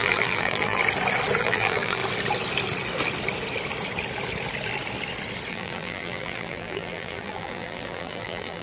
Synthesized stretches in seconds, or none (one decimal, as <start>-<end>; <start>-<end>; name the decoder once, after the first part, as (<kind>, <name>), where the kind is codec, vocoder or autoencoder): 0.0-0.8 (vocoder, BigVGAN v2); 1.4-2.0; 5.5-8.6